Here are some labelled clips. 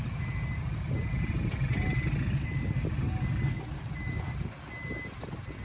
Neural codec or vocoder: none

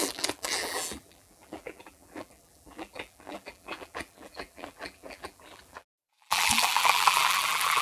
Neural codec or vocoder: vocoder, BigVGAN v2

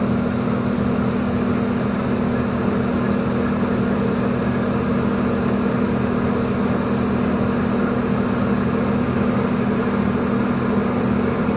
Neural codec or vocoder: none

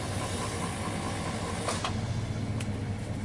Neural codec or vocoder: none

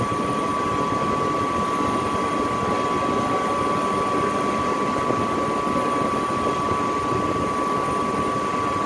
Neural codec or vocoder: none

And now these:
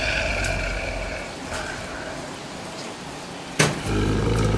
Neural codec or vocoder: none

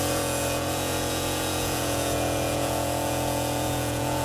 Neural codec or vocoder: vocoder, Vocos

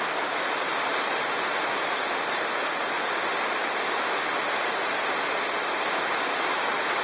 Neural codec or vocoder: none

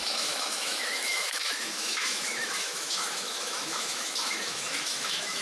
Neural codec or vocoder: autoencoder, DAC-VAE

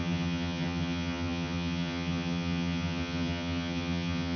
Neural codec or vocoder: vocoder, HiFi-GAN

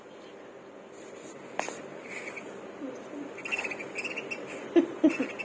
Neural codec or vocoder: none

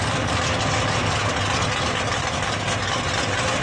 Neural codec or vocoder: none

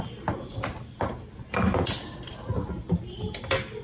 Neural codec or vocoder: none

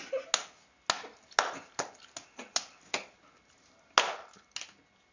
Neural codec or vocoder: none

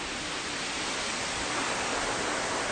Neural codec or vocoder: none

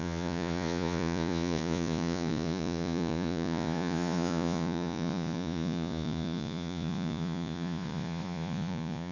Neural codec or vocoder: vocoder, Vocos